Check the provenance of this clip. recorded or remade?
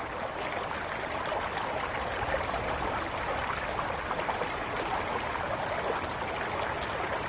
recorded